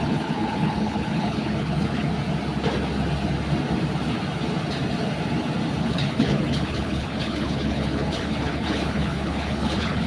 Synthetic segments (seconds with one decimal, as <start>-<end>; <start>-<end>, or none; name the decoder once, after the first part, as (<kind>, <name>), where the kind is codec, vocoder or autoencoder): 0.0-2.1 (codec, HILCodec); 5.8-10.1